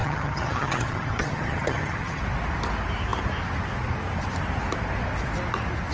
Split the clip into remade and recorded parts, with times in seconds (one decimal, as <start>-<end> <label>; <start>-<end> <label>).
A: 0.0-2.2 remade; 2.2-5.9 recorded